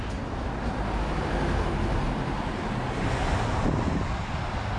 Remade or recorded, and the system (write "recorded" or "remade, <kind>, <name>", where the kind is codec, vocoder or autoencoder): recorded